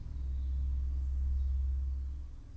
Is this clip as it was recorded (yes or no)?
yes